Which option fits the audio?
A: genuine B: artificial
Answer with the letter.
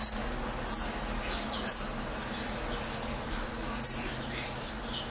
A